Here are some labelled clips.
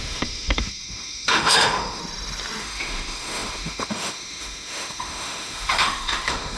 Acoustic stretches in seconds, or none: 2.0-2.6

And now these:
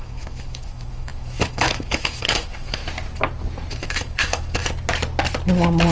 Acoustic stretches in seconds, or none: 2.8-3.7; 4.6-5.9

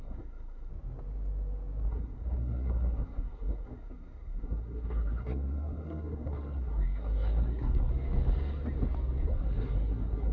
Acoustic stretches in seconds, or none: 0.7-1.9; 7.9-9.3

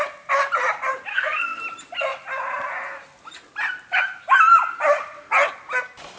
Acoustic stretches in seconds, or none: 0.0-1.1; 1.6-6.2

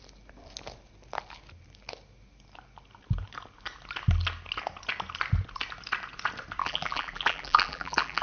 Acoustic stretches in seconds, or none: 0.0-6.6

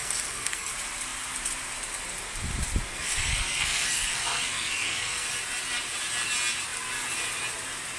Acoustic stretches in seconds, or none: 0.7-2.9; 5.3-8.0

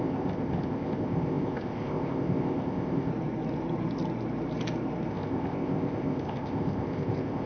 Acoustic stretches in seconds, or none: 3.1-5.1

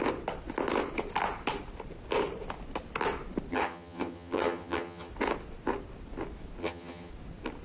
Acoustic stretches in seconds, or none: 0.0-3.5; 5.1-6.6; 7.1-7.6